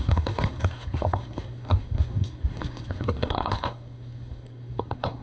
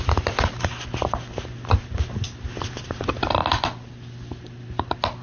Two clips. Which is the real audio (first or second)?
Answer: second